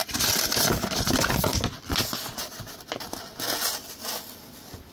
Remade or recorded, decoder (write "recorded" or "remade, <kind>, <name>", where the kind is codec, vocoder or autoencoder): recorded